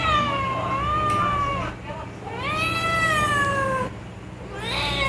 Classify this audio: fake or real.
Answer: real